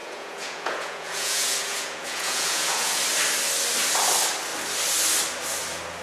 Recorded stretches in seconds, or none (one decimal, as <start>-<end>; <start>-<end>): 3.0-6.0